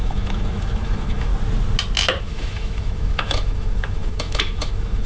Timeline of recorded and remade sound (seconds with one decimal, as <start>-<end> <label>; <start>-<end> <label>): 0.0-1.3 remade; 1.3-2.2 recorded; 2.2-5.1 remade